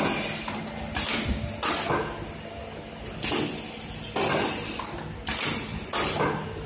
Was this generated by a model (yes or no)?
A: no